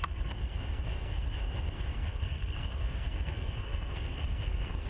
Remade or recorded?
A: remade